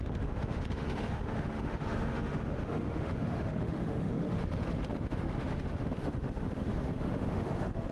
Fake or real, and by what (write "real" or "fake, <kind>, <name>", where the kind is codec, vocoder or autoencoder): fake, autoencoder, DAC-VAE